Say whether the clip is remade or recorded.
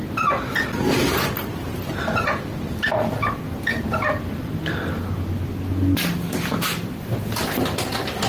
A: recorded